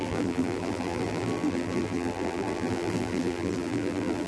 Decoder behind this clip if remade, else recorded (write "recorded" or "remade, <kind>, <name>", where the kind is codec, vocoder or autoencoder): remade, vocoder, BigVGAN v2